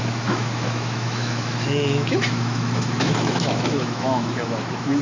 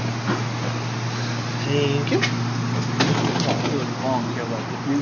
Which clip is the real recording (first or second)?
second